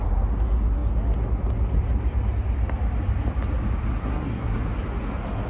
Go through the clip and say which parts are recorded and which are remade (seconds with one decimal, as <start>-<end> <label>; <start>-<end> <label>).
0.0-4.0 recorded; 4.0-4.6 remade; 4.6-5.5 recorded